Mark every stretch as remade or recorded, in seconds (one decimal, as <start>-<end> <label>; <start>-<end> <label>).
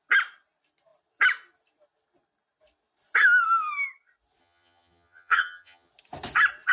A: 0.0-4.4 recorded; 4.4-5.9 remade; 5.9-6.7 recorded